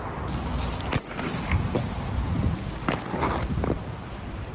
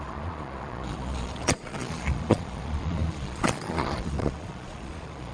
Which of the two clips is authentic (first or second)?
first